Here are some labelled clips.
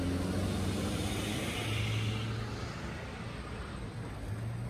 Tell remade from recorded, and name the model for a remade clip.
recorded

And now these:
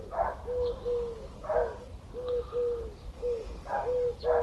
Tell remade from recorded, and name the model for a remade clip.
recorded